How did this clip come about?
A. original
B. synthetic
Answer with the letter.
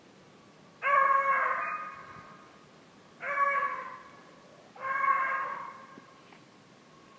A